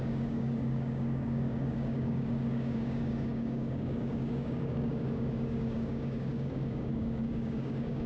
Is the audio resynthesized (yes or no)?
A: yes